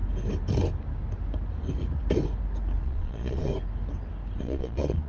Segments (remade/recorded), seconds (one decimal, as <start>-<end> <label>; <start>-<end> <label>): 0.0-2.8 recorded; 2.8-3.5 remade; 3.5-4.4 recorded; 4.4-5.1 remade